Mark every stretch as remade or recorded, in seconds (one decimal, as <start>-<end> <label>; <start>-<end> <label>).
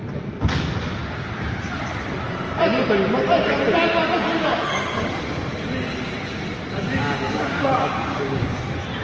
0.0-6.9 recorded; 6.9-8.6 remade; 8.6-9.0 recorded